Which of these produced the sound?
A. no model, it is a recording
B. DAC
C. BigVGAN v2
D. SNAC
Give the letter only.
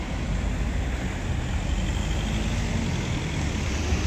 A